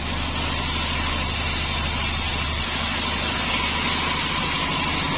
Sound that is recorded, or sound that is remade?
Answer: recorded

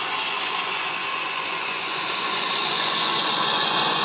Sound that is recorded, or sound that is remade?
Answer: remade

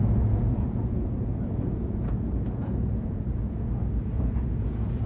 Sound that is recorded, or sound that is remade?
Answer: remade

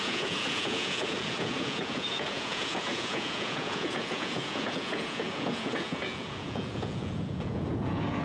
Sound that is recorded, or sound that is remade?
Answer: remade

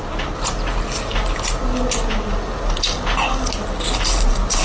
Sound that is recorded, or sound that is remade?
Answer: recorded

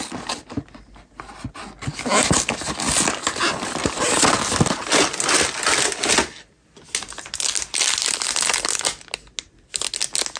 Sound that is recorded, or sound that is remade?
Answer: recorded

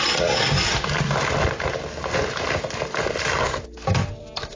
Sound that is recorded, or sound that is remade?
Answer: recorded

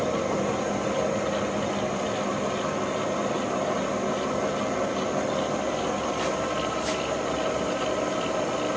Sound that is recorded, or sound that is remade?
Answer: recorded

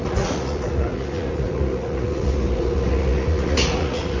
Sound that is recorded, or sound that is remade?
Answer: remade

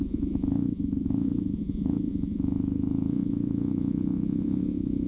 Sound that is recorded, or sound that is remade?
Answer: remade